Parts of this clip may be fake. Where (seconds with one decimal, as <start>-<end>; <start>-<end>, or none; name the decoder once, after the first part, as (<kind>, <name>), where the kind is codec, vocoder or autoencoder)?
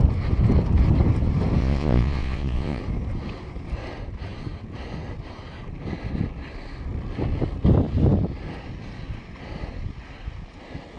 1.6-2.8 (vocoder, Vocos)